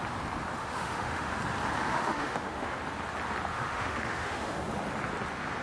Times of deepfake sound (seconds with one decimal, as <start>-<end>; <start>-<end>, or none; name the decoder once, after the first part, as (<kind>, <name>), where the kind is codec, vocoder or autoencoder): 0.6-1.4 (autoencoder, DAC-VAE); 1.9-2.8; 3.5-4.6